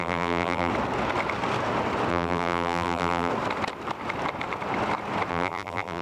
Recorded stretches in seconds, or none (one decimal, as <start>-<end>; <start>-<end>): 0.7-2.1; 3.3-5.3